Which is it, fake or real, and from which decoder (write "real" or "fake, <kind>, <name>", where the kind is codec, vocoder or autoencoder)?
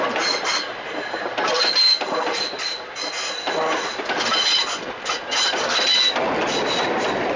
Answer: real